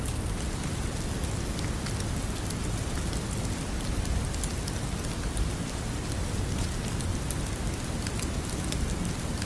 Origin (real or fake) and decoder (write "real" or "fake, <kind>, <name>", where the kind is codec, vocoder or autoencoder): real